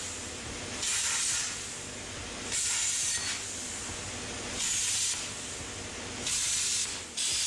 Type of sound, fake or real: real